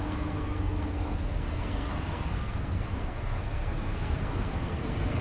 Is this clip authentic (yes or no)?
no